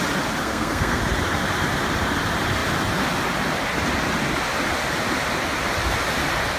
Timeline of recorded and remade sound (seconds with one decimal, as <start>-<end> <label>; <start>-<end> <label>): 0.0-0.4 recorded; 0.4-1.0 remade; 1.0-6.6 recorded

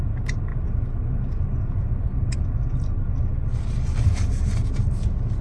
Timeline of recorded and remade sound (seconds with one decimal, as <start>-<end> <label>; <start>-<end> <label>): 0.0-5.4 recorded

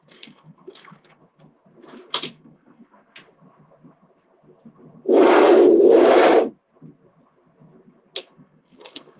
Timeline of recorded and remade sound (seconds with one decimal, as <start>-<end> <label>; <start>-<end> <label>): 0.0-1.2 remade; 1.2-2.3 recorded; 2.3-3.0 remade; 3.0-8.2 recorded; 8.2-9.2 remade